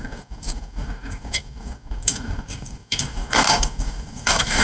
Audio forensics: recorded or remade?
remade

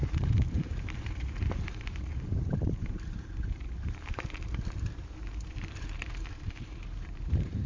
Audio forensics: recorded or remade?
remade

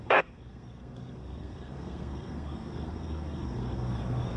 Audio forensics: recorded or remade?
remade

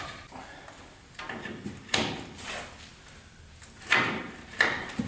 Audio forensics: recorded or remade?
remade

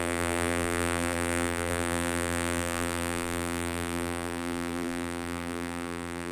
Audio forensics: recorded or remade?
remade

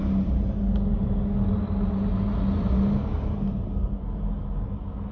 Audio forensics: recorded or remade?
recorded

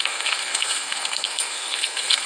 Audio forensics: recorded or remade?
remade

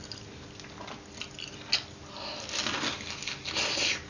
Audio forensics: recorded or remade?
recorded